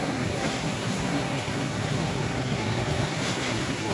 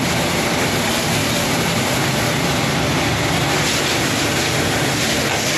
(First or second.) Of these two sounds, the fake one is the first